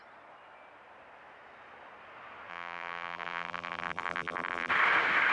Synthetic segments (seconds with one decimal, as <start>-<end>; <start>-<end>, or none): 2.5-4.7